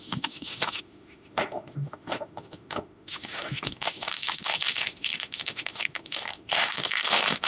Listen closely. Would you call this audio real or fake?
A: fake